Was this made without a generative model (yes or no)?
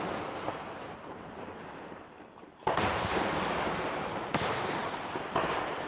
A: no